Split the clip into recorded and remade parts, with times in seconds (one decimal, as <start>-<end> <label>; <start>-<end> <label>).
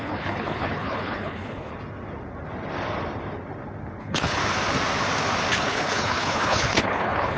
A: 0.0-1.7 remade; 1.7-4.0 recorded; 4.0-4.4 remade; 4.4-5.5 recorded; 5.5-7.4 remade